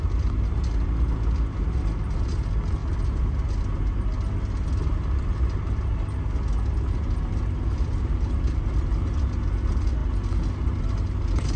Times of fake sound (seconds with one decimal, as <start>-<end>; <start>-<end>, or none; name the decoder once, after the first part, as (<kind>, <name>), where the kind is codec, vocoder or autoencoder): none